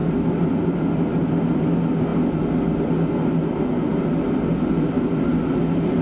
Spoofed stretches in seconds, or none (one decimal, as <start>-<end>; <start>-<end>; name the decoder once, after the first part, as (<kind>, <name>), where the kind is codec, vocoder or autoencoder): none